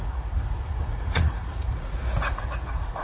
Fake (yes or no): yes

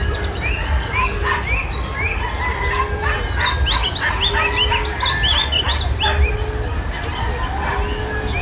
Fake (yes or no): no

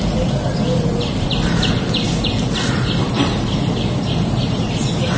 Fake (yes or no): no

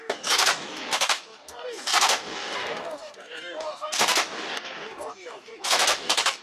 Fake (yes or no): yes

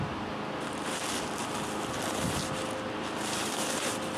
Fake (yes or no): no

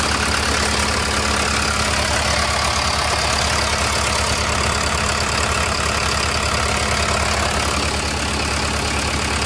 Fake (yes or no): no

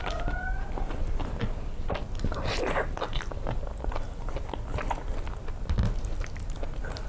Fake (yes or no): no